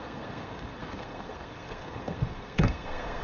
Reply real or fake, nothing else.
fake